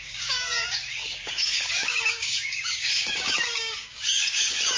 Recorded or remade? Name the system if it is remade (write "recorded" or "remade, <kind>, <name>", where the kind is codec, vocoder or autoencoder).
remade, codec, DAC